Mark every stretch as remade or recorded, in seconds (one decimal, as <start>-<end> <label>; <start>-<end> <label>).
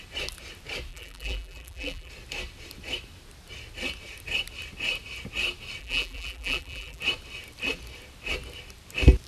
0.0-0.9 recorded; 0.9-2.1 remade; 2.1-5.8 recorded; 5.8-7.0 remade; 7.0-9.3 recorded